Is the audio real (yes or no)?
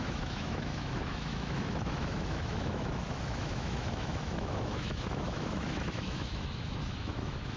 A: no